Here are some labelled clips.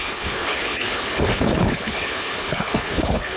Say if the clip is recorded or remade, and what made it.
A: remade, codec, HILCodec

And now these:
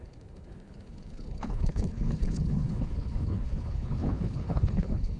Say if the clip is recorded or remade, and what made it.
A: remade, codec, HILCodec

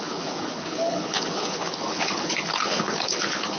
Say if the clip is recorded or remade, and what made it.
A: remade, codec, HILCodec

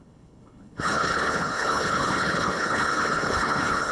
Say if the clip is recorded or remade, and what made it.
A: remade, codec, HILCodec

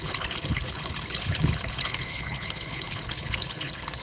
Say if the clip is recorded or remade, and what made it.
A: remade, codec, HILCodec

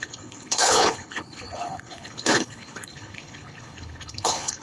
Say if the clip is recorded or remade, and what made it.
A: remade, codec, HILCodec